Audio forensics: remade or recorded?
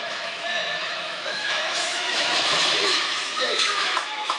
remade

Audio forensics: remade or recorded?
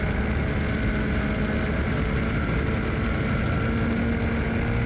recorded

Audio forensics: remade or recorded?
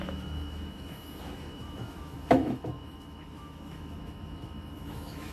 remade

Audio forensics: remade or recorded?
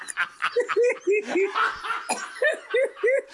recorded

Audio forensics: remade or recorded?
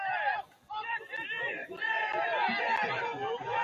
recorded